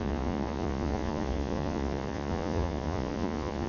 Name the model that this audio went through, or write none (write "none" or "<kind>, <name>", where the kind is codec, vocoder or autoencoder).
vocoder, Vocos